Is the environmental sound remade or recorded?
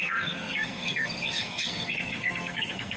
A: remade